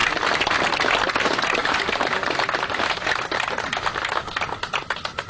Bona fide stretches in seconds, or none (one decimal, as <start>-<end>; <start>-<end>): 0.0-1.6; 4.1-5.3